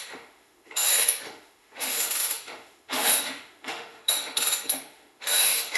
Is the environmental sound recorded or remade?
remade